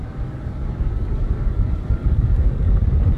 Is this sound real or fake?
fake